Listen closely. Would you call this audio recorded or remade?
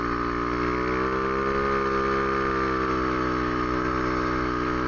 recorded